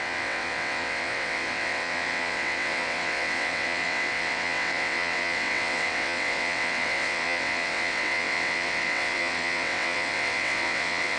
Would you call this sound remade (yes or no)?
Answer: yes